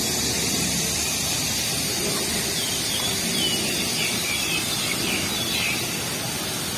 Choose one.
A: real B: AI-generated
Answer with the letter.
A